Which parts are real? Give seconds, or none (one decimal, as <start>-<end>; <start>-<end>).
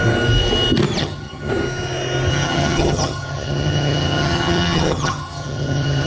0.0-1.0; 1.5-2.3